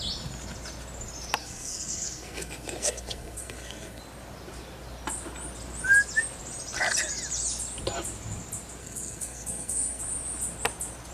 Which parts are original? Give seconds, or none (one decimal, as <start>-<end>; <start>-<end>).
0.0-1.4; 4.0-8.8; 10.0-11.1